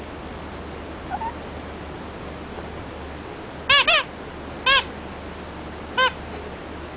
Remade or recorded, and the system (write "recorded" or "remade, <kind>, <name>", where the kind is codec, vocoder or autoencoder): recorded